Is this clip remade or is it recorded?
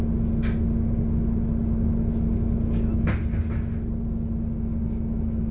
recorded